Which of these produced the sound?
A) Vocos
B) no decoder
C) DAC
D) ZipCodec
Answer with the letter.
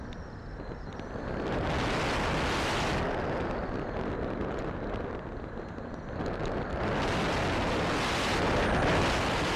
B